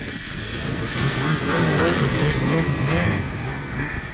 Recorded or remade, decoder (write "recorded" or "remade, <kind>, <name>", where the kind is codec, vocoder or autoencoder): remade, codec, SNAC